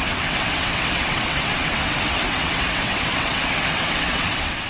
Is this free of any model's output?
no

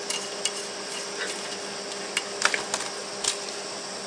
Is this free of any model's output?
yes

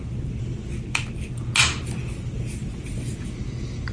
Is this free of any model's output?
yes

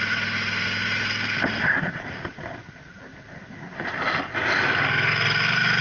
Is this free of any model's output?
yes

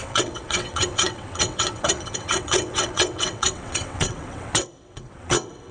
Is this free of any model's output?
no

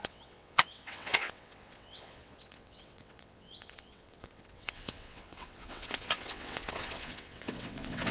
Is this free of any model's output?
no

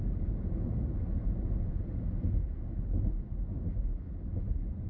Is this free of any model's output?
yes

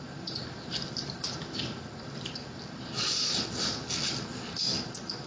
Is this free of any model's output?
yes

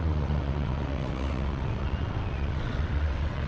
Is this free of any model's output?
no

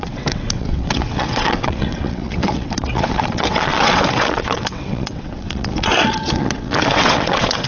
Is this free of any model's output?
no